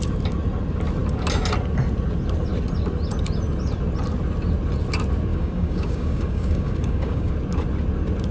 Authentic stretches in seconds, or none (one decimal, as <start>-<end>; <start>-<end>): 0.0-5.3; 7.3-8.3